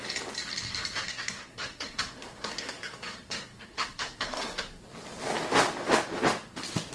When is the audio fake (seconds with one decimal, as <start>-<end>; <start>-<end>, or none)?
1.1-4.8